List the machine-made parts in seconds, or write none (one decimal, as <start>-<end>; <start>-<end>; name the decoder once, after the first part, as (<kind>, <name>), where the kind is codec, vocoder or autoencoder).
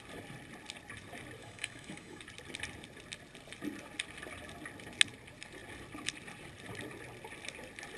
1.4-2.2 (autoencoder, DAC-VAE)